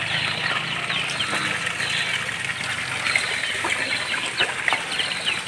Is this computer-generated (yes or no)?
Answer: no